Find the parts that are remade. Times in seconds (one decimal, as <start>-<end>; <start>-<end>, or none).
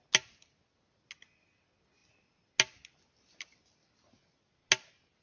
none